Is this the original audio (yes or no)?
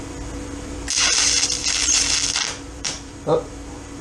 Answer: no